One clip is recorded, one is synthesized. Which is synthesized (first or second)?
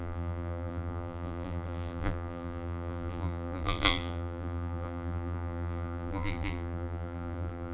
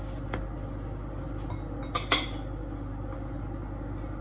first